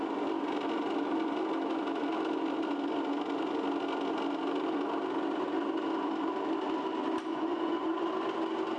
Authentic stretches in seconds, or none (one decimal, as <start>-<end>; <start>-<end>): 0.0-7.3; 8.1-8.8